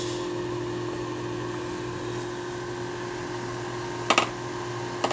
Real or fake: real